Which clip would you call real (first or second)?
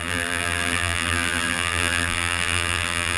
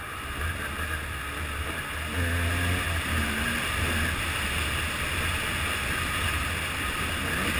second